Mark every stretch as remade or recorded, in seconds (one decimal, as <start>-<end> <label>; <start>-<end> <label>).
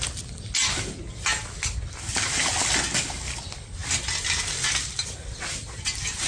0.0-6.3 recorded